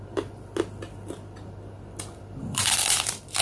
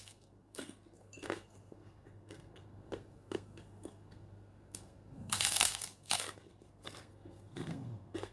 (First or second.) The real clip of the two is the first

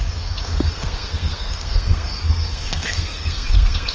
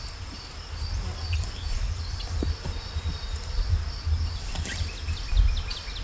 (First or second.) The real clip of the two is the second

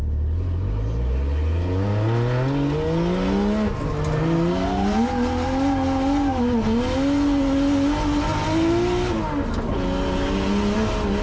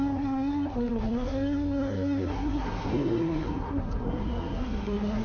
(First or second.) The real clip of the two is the first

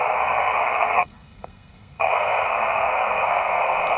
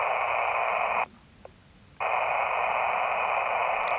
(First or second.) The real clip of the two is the second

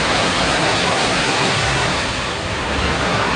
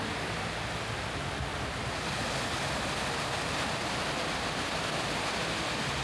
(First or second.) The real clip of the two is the second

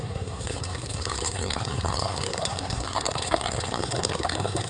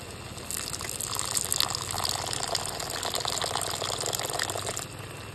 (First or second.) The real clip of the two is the second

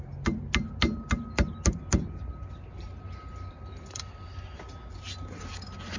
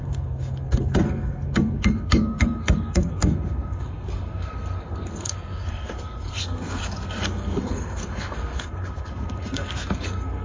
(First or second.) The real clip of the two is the first